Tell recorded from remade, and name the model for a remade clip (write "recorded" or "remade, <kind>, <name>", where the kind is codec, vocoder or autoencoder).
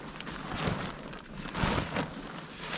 recorded